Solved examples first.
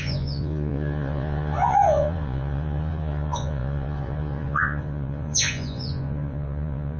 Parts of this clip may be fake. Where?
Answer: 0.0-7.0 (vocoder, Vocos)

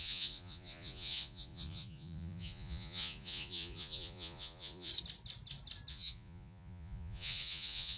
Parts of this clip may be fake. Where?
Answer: 0.0-4.9 (vocoder, Vocos); 5.9-8.0

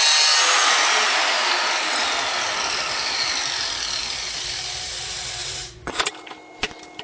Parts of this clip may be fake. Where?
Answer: 5.4-6.0 (vocoder, Vocos)